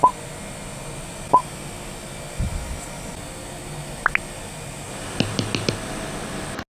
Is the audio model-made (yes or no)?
no